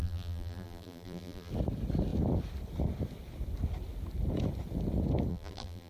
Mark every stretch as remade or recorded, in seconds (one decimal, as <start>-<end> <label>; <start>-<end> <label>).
0.0-1.5 remade; 1.5-5.3 recorded; 5.3-5.9 remade